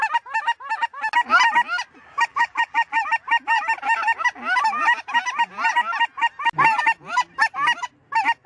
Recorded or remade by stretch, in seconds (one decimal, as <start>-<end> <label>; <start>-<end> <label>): 0.0-2.3 recorded; 2.3-3.0 remade; 3.0-8.5 recorded